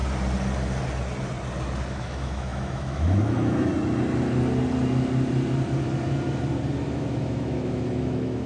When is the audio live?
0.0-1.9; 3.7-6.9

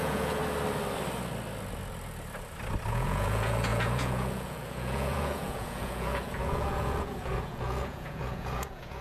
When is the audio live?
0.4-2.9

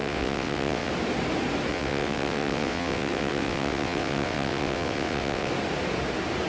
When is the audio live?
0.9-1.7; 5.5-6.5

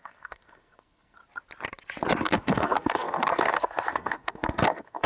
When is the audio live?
1.2-2.2

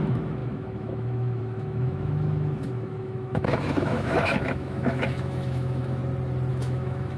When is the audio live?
6.0-6.5

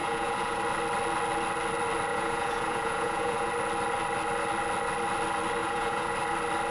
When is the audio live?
0.6-2.1; 3.5-5.6; 6.1-6.7

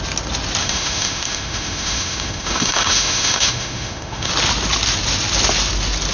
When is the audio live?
0.0-0.6; 4.3-6.1